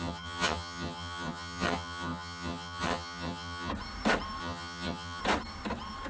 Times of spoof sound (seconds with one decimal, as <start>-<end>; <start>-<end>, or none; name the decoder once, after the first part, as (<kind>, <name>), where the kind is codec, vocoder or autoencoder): 0.0-3.7 (vocoder, HiFi-GAN); 4.4-5.2